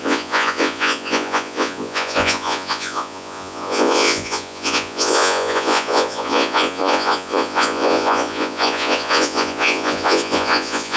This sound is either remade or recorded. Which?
remade